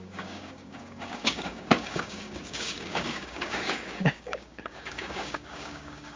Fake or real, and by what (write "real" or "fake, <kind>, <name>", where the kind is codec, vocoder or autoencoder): fake, codec, DAC